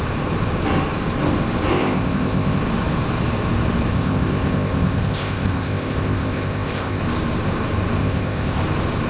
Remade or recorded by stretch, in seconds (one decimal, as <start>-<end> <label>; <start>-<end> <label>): 0.0-1.7 recorded; 1.7-2.6 remade; 2.6-3.9 recorded; 3.9-7.0 remade; 7.0-8.0 recorded; 8.0-8.6 remade; 8.6-9.1 recorded